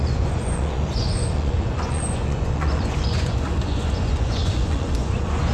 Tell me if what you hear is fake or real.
fake